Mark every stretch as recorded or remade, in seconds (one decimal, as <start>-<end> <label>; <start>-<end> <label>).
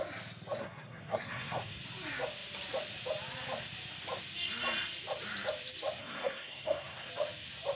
0.0-0.6 recorded; 0.6-1.8 remade; 1.8-6.0 recorded; 6.0-7.1 remade; 7.1-7.8 recorded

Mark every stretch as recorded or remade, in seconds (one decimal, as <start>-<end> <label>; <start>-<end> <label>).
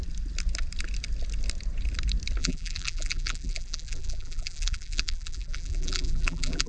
0.0-2.4 recorded; 2.4-6.7 remade